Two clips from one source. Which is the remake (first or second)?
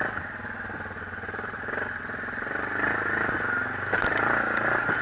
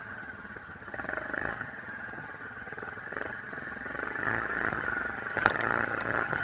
second